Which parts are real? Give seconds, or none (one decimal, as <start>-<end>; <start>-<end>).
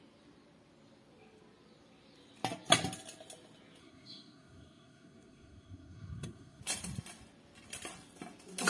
0.0-3.8; 6.6-8.7